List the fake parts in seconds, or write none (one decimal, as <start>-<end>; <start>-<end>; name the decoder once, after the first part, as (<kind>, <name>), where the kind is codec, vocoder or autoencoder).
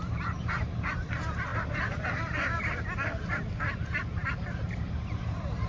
0.0-5.7 (vocoder, BigVGAN v2)